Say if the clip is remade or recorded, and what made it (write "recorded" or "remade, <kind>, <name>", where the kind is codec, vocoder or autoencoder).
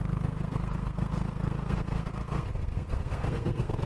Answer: remade, codec, SNAC